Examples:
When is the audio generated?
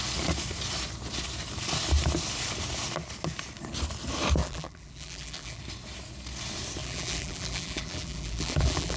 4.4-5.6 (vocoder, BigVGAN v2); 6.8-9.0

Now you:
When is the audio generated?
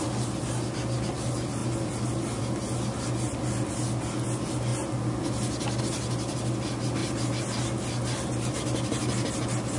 none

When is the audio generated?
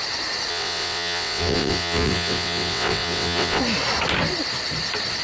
0.5-3.6 (vocoder, WaveNeXt)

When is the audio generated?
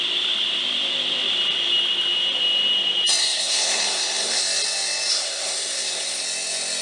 3.2-4.4 (codec, SNAC); 5.1-6.2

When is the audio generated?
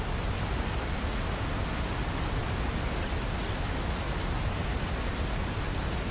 none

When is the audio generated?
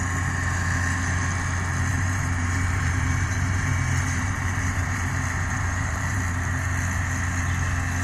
1.9-6.2 (vocoder, BigVGAN v2)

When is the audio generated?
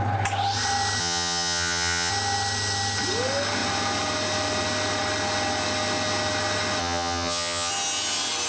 1.0-2.1 (vocoder, HiFi-GAN); 6.8-7.7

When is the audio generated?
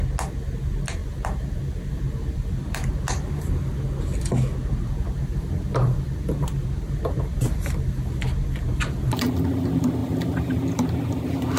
1.0-3.4 (vocoder, BigVGAN v2); 4.6-9.3; 10.0-10.6